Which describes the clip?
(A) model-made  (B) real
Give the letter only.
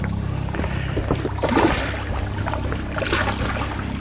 B